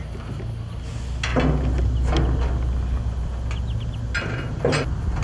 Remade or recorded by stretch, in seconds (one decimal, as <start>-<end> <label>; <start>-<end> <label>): 0.0-5.2 recorded